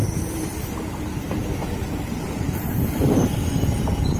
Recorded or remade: remade